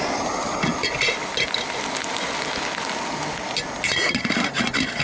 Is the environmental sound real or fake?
real